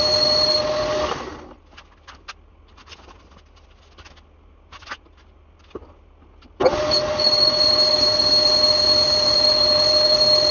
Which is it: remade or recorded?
recorded